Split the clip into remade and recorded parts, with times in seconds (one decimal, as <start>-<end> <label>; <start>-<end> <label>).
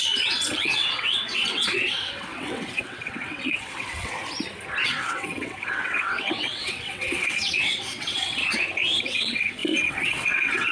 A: 0.0-4.2 remade; 4.2-4.8 recorded; 4.8-8.4 remade; 8.4-9.0 recorded; 9.0-10.7 remade